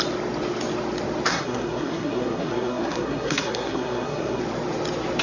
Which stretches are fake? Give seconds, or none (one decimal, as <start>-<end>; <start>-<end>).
1.3-4.4